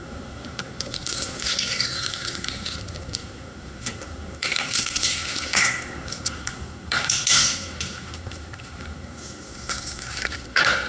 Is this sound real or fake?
fake